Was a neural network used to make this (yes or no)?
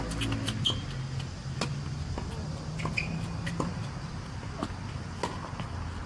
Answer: no